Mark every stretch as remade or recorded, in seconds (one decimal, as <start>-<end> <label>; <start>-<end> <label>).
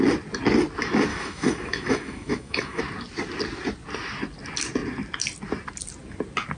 0.0-1.1 recorded; 1.1-2.8 remade; 2.8-6.6 recorded